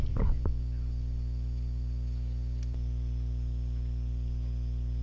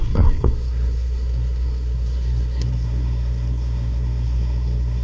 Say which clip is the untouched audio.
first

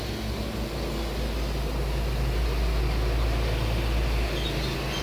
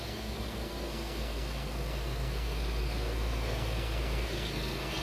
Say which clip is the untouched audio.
first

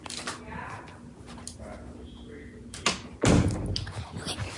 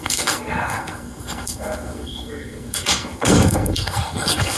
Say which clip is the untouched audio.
first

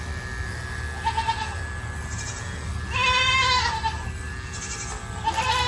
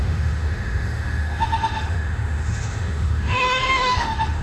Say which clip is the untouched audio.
first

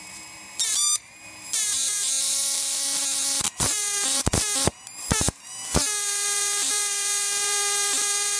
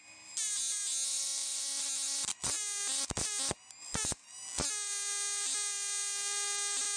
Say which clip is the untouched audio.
second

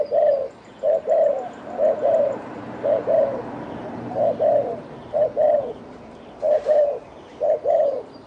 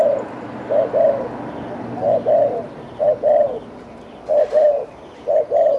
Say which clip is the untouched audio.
second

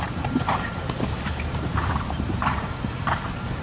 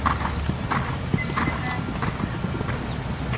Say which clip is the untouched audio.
second